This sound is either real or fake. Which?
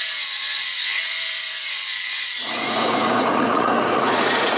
fake